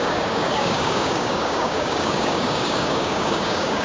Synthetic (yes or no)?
yes